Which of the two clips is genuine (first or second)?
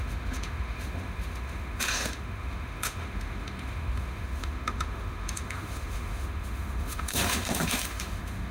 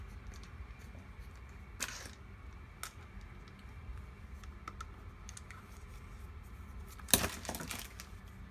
second